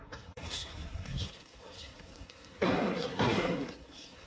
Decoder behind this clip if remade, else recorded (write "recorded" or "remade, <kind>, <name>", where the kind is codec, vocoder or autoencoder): remade, codec, SNAC